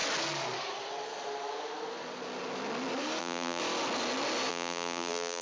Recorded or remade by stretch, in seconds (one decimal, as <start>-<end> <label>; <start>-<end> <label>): 0.0-3.2 recorded; 3.2-3.6 remade; 3.6-4.5 recorded; 4.5-5.4 remade